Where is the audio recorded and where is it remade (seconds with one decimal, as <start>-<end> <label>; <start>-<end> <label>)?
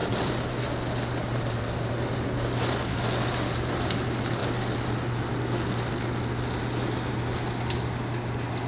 0.0-0.7 remade; 0.7-1.2 recorded; 1.2-1.9 remade; 1.9-8.7 recorded